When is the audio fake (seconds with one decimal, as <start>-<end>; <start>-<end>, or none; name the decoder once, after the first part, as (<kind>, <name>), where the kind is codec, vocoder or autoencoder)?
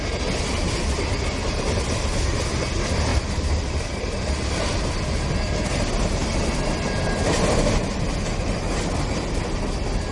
3.1-4.9 (vocoder, BigVGAN v2)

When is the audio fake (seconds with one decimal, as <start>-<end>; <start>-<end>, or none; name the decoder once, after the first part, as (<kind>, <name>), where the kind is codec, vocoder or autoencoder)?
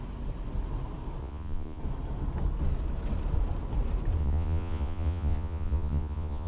1.2-1.8 (vocoder, Vocos); 4.2-6.5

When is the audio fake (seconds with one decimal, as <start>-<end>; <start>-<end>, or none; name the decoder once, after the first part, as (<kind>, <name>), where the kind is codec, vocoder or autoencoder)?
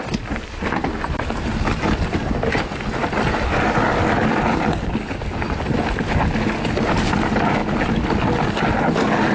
none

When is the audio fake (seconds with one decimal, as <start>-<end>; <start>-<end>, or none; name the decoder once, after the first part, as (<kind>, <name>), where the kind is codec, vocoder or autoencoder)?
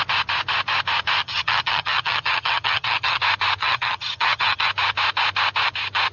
1.2-3.2 (vocoder, HiFi-GAN); 3.6-4.7